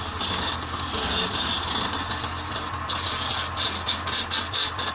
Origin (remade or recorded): recorded